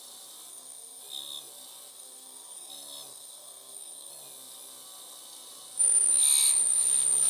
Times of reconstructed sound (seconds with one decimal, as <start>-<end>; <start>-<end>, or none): 0.5-1.0; 1.9-2.7; 3.1-4.1